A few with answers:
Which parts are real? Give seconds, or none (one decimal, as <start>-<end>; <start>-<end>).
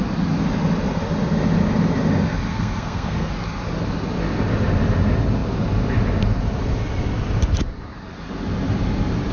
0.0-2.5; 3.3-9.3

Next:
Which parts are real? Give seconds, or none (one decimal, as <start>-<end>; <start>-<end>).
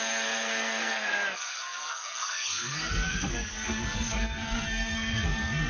none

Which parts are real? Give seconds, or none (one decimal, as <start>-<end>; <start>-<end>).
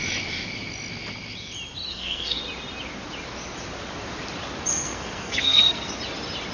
0.0-1.9; 2.4-4.7; 5.9-6.5